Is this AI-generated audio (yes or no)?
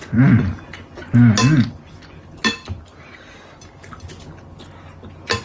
no